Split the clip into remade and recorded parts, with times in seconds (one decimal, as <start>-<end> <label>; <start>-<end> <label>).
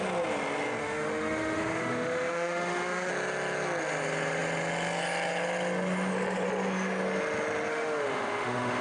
0.0-0.8 recorded; 0.8-3.1 remade; 3.1-7.7 recorded; 7.7-8.8 remade